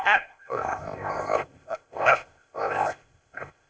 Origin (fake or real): fake